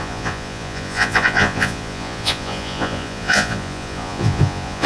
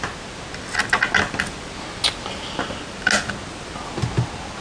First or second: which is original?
second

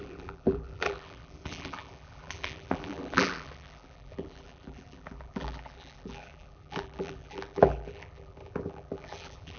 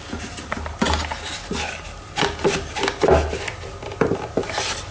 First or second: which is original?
second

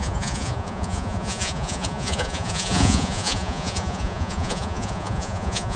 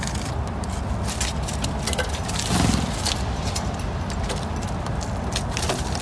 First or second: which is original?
second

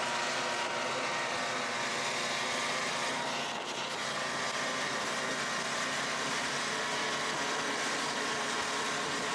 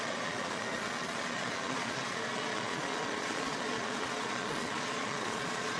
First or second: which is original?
first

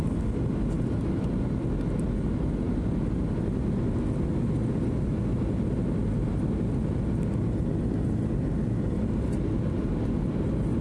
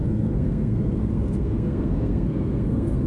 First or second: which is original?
first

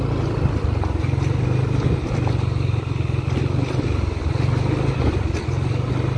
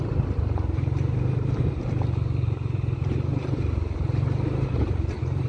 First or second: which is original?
first